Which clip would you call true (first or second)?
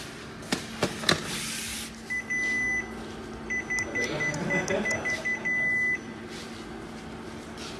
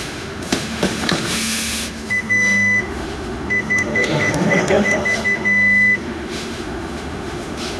first